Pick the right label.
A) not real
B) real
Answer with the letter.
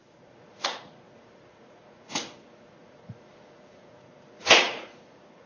A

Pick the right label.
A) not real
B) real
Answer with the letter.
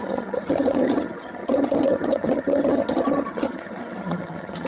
A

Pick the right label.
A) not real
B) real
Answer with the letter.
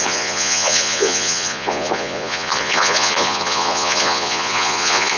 A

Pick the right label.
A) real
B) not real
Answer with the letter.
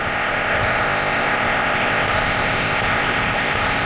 B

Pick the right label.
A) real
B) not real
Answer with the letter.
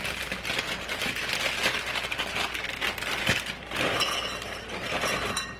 A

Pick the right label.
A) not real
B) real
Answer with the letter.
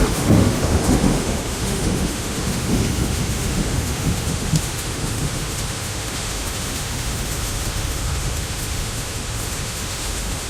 A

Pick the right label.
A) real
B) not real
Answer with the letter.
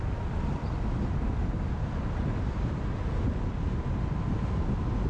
A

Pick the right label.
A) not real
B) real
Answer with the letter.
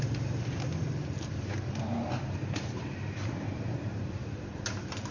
A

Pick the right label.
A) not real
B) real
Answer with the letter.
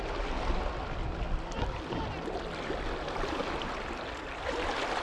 B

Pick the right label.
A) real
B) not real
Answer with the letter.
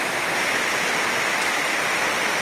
A